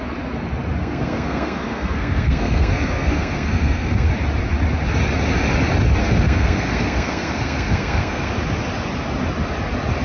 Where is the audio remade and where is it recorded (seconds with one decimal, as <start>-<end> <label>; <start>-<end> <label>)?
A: 0.0-0.8 recorded; 0.8-4.1 remade; 4.1-6.0 recorded; 6.0-8.3 remade; 8.3-10.0 recorded